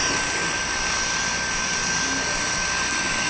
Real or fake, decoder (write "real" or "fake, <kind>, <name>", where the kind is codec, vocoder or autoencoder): real